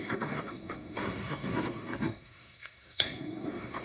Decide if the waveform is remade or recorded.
remade